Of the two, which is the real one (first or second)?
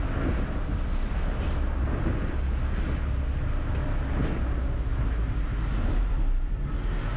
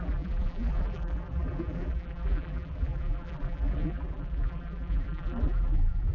first